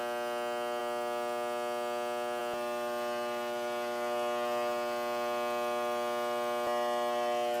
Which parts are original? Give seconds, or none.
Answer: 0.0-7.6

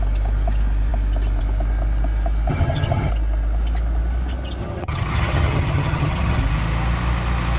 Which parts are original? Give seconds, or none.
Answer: 0.0-2.5; 3.1-4.6; 6.4-7.6

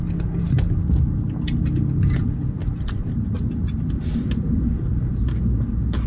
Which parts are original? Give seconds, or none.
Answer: 0.0-6.1

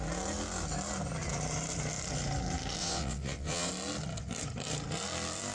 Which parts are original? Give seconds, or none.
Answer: 0.0-2.8; 3.7-5.5

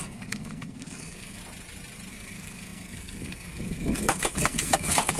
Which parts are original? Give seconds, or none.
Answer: 1.4-2.1

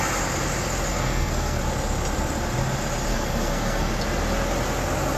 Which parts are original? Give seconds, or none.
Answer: 0.0-0.9; 1.6-3.1; 3.9-5.2

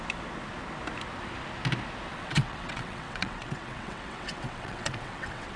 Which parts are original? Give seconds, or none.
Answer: 0.0-2.1